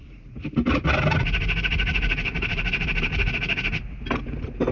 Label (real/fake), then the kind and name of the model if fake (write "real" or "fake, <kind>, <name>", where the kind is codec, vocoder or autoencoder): real